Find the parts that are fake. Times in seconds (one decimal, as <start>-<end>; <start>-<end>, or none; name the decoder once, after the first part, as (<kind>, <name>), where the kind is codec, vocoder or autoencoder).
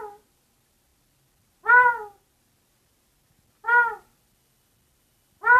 none